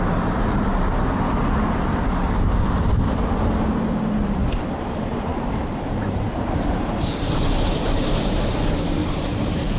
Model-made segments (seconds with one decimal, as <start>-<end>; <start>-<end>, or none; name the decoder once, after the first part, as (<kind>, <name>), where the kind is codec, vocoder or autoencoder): 5.3-8.6 (vocoder, BigVGAN v2); 9.0-9.8